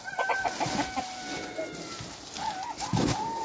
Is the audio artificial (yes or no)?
no